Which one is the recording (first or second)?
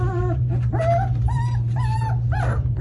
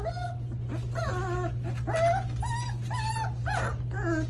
second